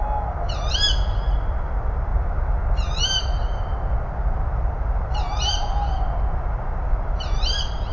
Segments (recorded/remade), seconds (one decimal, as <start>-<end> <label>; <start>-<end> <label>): 0.0-7.9 recorded